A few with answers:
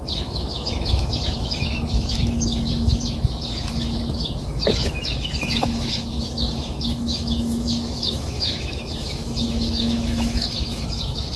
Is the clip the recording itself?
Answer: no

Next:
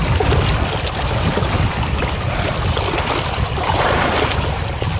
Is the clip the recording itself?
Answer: no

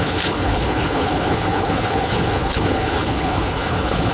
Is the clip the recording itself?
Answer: no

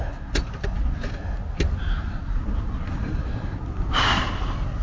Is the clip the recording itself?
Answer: yes